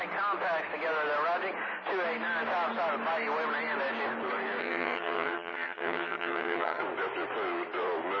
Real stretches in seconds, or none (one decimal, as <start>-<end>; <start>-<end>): 0.0-4.6; 6.8-8.2